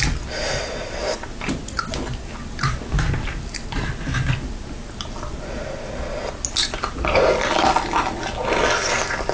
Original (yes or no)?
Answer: yes